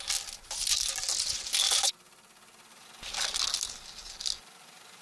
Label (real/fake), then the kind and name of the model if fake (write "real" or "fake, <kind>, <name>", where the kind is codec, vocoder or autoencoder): real